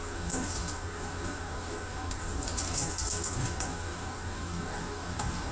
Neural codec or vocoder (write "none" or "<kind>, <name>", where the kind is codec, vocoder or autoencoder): codec, DAC